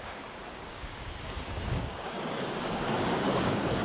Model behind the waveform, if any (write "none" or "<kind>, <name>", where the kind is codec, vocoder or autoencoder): codec, DAC